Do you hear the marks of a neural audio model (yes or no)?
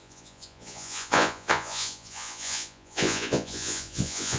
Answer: yes